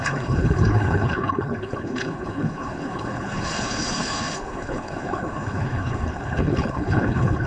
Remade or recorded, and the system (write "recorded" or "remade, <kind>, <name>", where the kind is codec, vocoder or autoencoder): remade, codec, HILCodec